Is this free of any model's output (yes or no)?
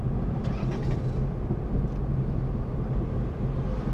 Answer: yes